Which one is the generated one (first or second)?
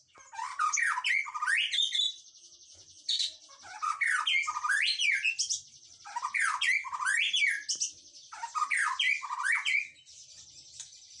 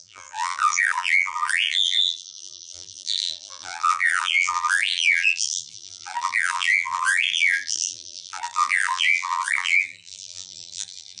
second